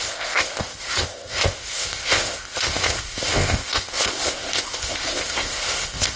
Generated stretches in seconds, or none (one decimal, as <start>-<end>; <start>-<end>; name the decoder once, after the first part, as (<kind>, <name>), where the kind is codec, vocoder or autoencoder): 0.0-6.2 (codec, ZipCodec)